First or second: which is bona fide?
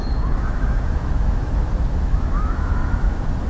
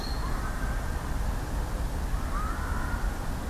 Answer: second